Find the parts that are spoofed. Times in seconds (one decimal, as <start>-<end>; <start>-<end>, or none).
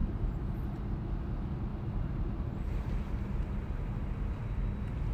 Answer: 0.0-0.5; 1.7-3.5